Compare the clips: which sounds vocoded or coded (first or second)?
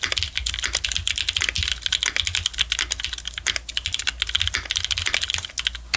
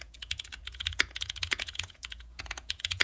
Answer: second